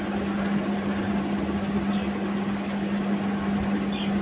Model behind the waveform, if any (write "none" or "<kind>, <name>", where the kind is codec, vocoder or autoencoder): none